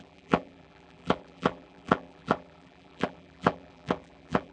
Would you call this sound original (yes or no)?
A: no